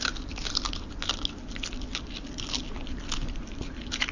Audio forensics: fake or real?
real